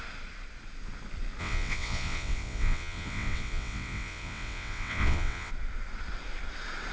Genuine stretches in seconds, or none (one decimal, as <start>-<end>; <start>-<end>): 0.0-1.4; 5.5-6.9